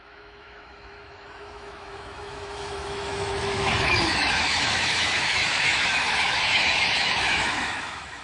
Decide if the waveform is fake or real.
fake